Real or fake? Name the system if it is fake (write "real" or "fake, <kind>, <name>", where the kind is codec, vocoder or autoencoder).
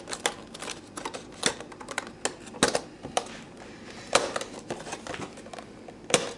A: real